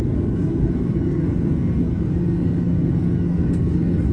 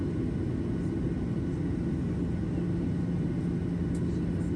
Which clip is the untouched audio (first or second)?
second